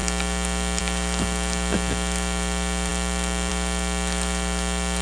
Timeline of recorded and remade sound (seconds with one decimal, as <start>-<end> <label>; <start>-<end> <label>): 0.0-5.0 recorded